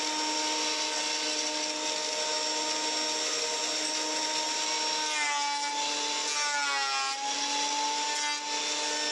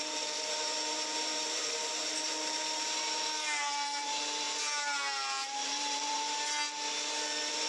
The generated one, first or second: second